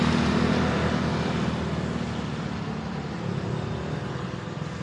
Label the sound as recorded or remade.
recorded